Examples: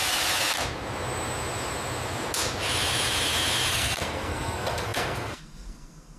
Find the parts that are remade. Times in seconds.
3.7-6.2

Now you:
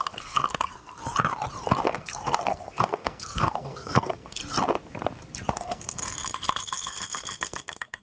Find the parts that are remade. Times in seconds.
0.0-1.0; 1.9-4.4; 5.5-6.0; 6.6-8.0

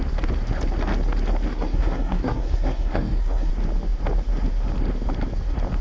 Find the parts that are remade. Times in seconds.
1.5-3.5

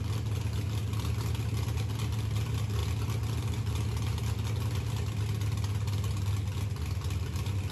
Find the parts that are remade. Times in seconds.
none

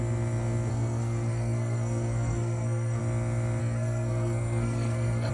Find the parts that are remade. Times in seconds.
0.7-3.0; 3.6-5.3

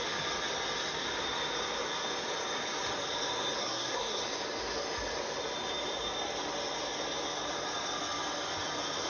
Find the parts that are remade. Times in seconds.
3.6-4.2

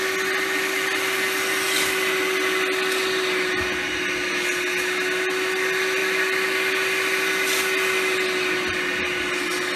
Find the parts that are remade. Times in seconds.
none